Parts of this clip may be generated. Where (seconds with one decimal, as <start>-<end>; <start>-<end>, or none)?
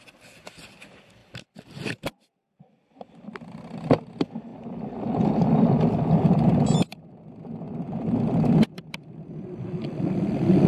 4.5-7.4